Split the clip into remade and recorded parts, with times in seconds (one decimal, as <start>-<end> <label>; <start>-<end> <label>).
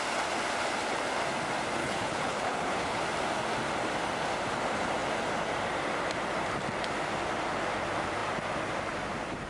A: 0.0-1.8 recorded; 1.8-3.0 remade; 3.0-9.5 recorded